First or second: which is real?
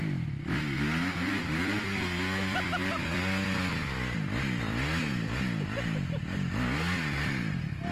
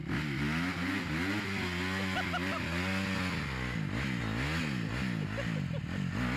second